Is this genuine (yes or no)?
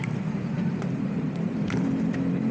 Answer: no